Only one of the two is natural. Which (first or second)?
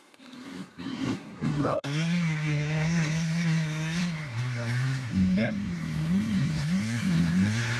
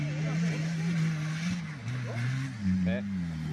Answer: second